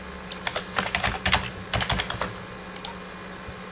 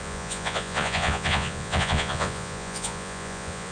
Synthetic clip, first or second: second